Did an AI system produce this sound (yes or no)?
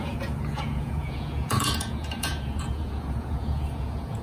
yes